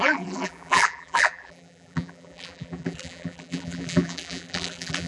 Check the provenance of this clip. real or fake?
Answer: fake